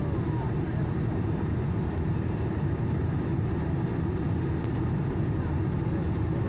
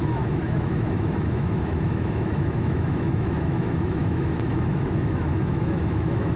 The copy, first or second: second